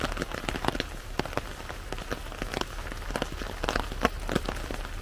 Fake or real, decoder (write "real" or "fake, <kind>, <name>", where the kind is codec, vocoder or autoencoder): real